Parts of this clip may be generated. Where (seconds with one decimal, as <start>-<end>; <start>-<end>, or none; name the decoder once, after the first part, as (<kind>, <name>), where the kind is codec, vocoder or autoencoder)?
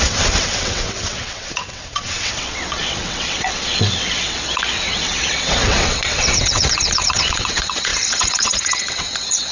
0.0-9.5 (vocoder, WaveNeXt)